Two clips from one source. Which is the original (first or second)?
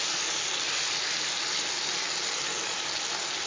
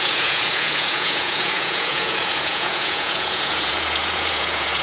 first